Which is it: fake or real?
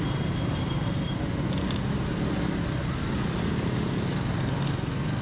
real